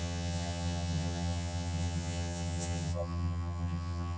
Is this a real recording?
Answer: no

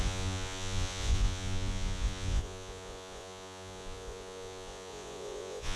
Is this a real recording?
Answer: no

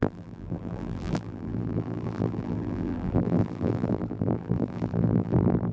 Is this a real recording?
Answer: no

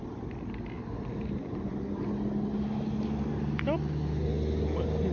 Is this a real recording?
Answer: yes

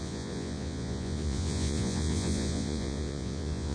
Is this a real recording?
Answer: no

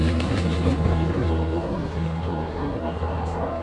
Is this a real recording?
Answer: no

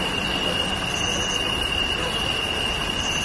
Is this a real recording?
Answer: yes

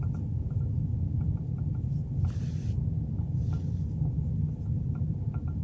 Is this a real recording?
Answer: yes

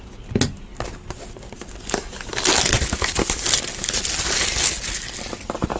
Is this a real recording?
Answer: yes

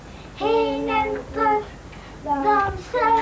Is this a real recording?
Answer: yes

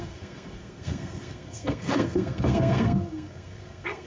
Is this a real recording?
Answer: no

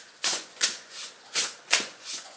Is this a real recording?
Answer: no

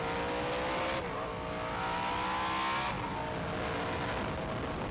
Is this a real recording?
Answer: yes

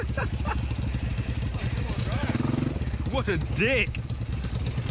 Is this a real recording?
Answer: yes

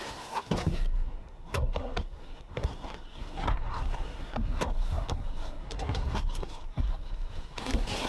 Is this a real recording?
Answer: no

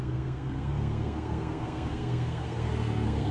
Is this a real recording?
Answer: no